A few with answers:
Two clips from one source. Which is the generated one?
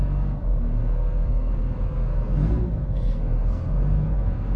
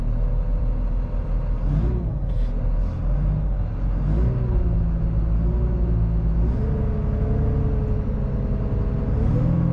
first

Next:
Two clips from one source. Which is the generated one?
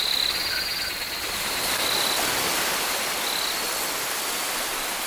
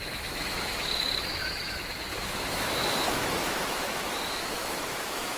second